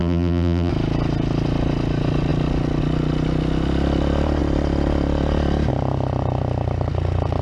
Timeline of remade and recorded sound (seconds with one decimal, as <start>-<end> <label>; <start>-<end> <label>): 0.0-0.7 remade; 0.7-7.4 recorded